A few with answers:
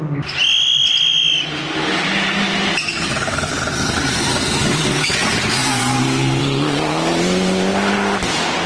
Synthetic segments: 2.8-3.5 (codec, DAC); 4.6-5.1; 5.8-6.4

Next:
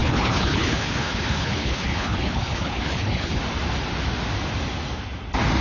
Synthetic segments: 0.0-3.4 (codec, HILCodec)

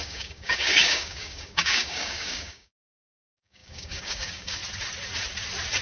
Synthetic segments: 0.0-4.6 (codec, DAC)